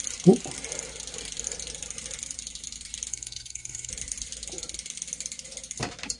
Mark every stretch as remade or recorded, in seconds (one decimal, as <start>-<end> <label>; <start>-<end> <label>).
0.0-3.1 recorded; 3.1-3.9 remade; 3.9-6.2 recorded